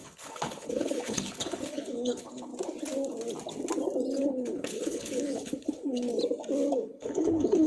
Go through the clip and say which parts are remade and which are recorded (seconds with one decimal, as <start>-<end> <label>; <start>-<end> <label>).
0.0-2.5 remade; 2.5-4.2 recorded; 4.2-6.1 remade; 6.1-6.7 recorded; 6.7-7.7 remade